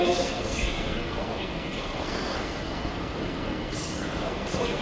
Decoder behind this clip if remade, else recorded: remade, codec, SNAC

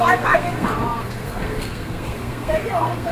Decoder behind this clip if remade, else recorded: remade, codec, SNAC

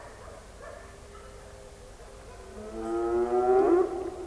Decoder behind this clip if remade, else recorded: recorded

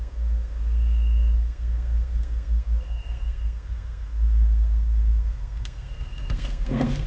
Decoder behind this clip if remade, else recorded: remade, codec, SNAC